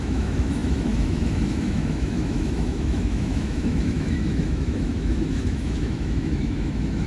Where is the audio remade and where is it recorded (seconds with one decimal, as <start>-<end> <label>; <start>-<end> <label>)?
0.0-7.1 remade